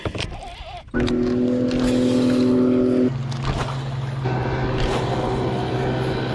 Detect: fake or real real